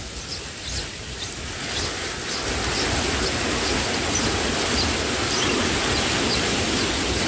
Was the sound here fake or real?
real